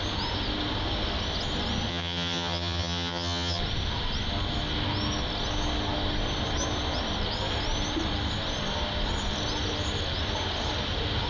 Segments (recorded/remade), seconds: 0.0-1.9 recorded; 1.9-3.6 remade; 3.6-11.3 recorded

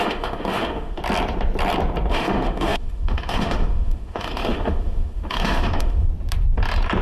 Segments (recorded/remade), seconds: 0.0-1.0 remade; 1.0-2.1 recorded; 2.1-6.1 remade; 6.1-7.0 recorded

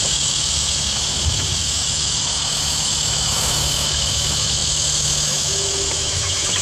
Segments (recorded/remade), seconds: 0.0-6.6 remade

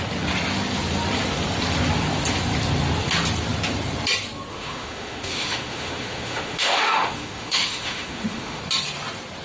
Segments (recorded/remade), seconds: 0.0-4.5 recorded; 4.5-8.6 remade; 8.6-9.4 recorded

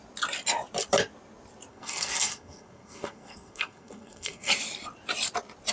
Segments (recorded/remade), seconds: 0.0-1.7 recorded; 1.7-4.5 remade; 4.5-5.7 recorded

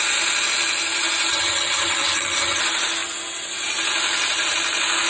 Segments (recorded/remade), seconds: 0.0-1.3 recorded; 1.3-2.6 remade; 2.6-5.1 recorded

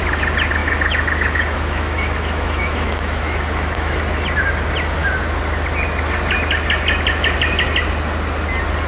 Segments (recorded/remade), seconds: 0.0-0.6 recorded; 0.6-4.0 remade; 4.0-8.9 recorded

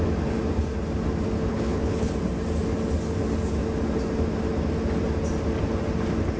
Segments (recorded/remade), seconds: 0.0-1.5 recorded; 1.5-2.1 remade; 2.1-6.4 recorded